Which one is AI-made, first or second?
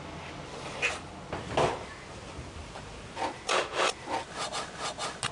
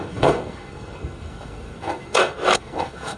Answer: second